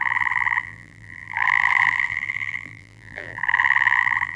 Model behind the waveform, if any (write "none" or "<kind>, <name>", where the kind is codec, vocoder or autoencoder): vocoder, BigVGAN v2